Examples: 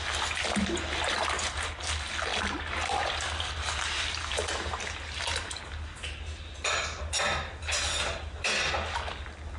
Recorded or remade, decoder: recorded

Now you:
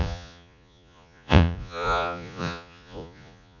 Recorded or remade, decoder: remade, vocoder, Vocos